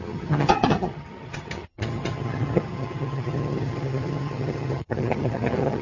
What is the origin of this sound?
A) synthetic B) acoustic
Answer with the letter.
A